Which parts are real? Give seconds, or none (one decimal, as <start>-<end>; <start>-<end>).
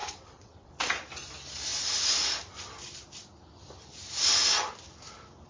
0.7-5.5